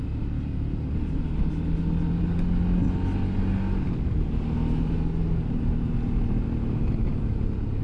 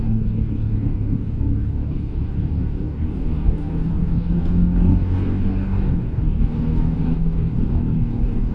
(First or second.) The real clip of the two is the first